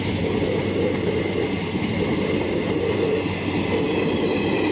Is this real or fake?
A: real